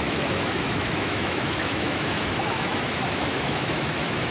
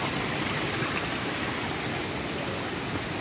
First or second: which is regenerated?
first